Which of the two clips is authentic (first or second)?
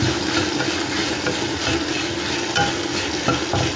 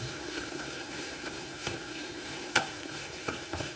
first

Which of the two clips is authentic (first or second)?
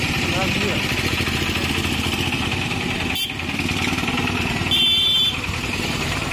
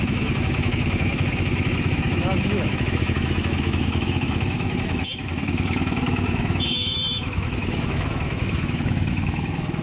first